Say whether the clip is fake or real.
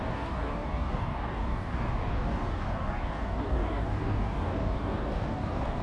fake